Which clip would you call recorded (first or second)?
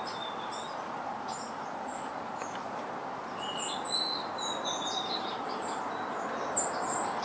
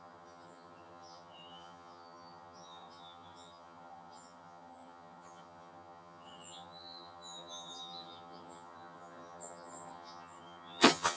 first